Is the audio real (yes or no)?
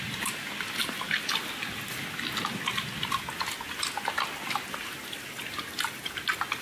yes